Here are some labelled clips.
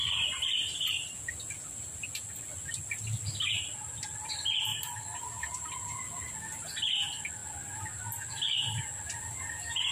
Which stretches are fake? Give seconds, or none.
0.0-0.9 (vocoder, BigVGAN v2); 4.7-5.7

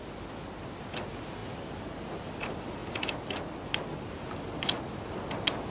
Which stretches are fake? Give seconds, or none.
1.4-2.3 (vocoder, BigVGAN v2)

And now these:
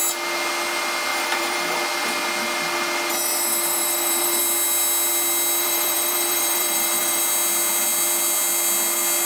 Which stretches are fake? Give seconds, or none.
1.1-1.8 (vocoder, BigVGAN v2); 3.1-4.4; 5.6-7.2

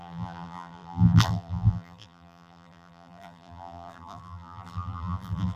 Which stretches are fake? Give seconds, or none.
0.0-5.6 (vocoder, BigVGAN v2)